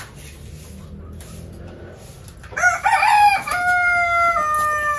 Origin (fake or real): real